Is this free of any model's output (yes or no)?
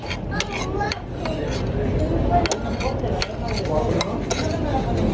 yes